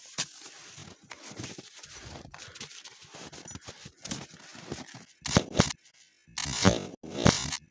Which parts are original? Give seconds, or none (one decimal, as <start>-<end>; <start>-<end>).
0.0-7.7